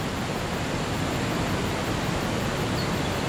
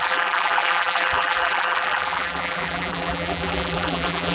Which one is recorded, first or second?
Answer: first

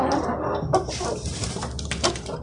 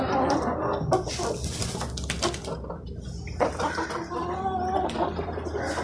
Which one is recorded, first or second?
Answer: second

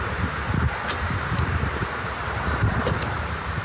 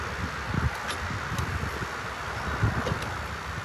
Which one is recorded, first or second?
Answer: second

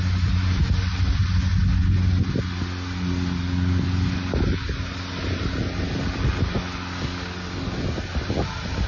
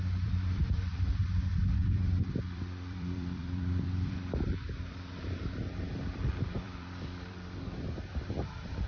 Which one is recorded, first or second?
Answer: first